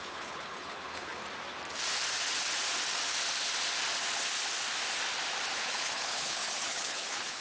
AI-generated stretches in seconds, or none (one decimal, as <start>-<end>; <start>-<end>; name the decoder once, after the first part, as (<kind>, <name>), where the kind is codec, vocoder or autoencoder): 0.0-1.2 (codec, HILCodec); 5.6-7.4